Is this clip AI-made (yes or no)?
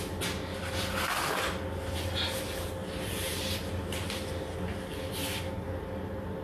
no